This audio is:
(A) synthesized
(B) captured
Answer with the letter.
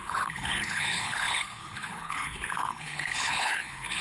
A